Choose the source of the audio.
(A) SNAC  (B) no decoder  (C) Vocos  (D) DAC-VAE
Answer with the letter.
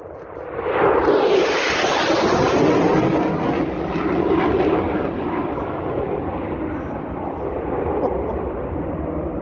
B